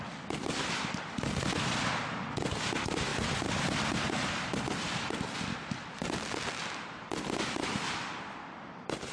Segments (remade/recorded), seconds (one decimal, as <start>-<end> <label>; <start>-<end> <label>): 0.0-9.1 recorded